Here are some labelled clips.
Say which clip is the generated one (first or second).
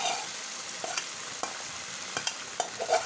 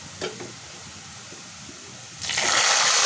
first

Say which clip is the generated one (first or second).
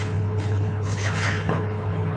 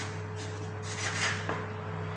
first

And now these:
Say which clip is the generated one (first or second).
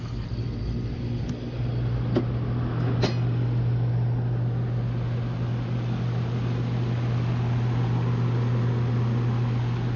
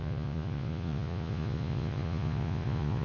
second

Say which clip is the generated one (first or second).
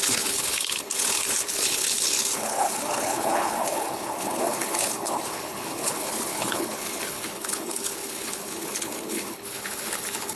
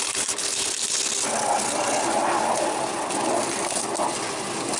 first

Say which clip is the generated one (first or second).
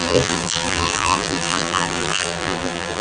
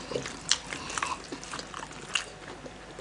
first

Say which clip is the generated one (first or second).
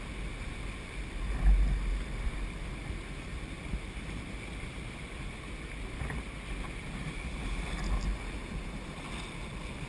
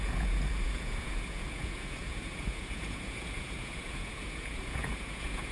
second